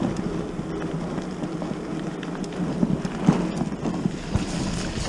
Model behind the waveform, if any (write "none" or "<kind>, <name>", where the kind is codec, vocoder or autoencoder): none